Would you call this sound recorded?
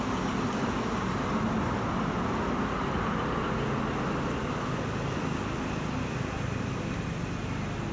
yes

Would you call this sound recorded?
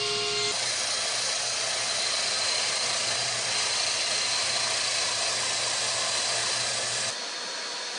yes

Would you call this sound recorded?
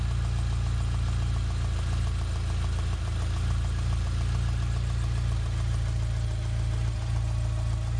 yes